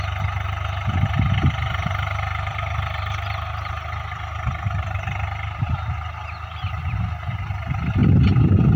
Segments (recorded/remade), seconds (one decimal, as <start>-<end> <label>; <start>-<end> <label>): 0.0-8.0 recorded; 8.0-8.8 remade

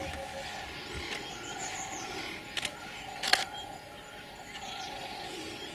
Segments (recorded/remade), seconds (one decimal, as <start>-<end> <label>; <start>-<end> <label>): 0.0-1.6 recorded; 1.6-2.2 remade; 2.2-3.3 recorded; 3.3-5.7 remade